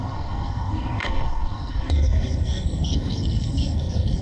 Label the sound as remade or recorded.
remade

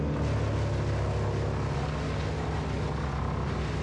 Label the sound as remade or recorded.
recorded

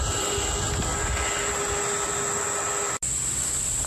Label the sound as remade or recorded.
recorded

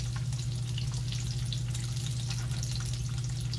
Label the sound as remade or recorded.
recorded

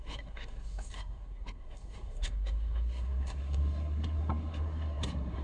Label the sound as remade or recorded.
remade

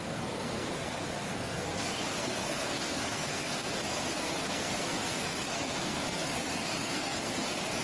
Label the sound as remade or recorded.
remade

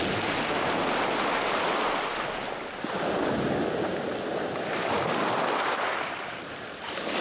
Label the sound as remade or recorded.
recorded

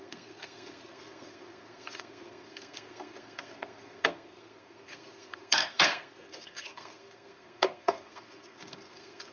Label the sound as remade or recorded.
remade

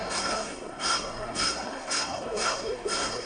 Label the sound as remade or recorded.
remade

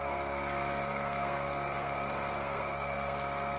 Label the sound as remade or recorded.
remade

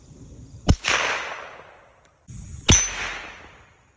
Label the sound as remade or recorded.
recorded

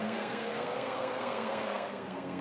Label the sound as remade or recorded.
remade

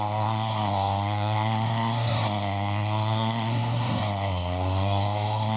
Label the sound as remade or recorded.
remade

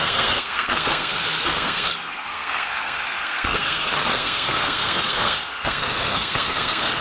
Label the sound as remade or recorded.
remade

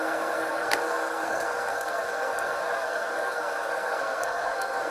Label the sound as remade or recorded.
remade